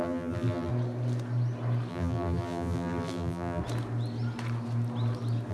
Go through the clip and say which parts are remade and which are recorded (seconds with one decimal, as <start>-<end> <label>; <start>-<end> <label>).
0.0-0.7 remade; 0.7-1.9 recorded; 1.9-3.6 remade; 3.6-5.5 recorded